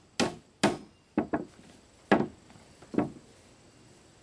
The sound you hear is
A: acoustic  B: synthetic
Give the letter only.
A